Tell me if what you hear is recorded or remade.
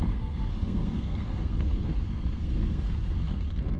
remade